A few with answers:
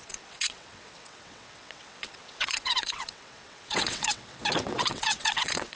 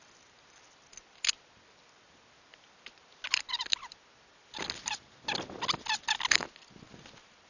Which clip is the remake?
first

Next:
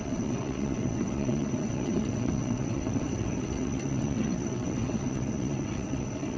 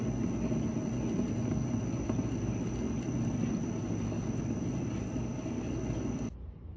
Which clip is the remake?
first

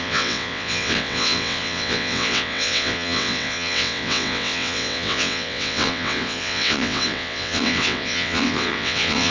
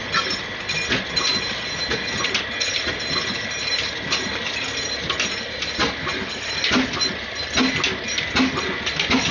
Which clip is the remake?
first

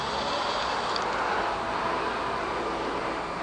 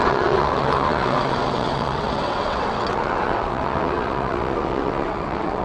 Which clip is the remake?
second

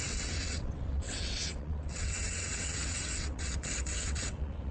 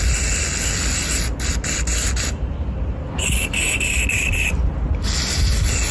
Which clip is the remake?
first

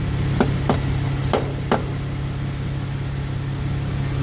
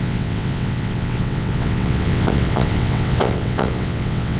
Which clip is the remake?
second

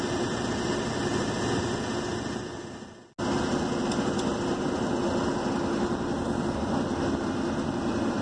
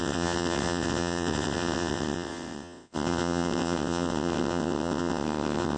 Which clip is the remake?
second